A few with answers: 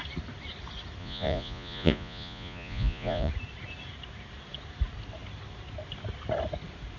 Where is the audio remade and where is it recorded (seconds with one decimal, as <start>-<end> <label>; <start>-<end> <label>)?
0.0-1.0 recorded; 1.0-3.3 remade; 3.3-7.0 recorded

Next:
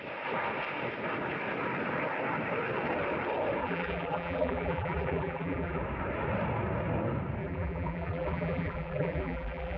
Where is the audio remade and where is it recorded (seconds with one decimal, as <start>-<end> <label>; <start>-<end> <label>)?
0.0-3.6 recorded; 3.6-5.8 remade; 5.8-7.4 recorded; 7.4-9.8 remade

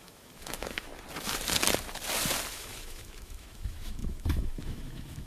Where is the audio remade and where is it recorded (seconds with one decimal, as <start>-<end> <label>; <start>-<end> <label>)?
0.0-0.9 remade; 0.9-2.5 recorded; 2.5-5.3 remade